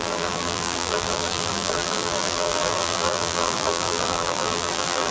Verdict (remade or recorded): remade